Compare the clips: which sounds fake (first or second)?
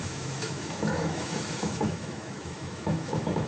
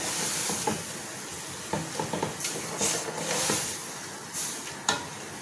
first